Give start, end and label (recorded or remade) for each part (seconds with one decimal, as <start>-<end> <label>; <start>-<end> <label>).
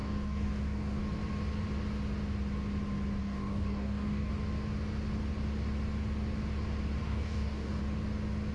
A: 0.0-1.0 remade; 1.0-3.2 recorded; 3.2-4.3 remade; 4.3-7.0 recorded; 7.0-7.8 remade; 7.8-8.5 recorded